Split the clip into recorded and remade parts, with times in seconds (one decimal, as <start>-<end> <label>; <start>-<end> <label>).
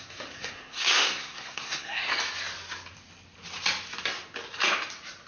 0.0-2.1 remade; 2.1-5.3 recorded